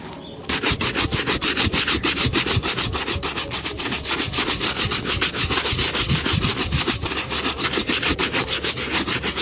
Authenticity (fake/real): real